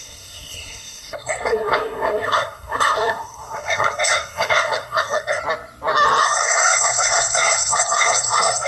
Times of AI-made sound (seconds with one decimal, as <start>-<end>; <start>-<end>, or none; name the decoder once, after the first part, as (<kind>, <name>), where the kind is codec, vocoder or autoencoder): 0.0-5.4 (codec, SNAC); 6.2-8.7